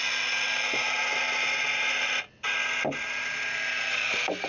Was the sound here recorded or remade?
recorded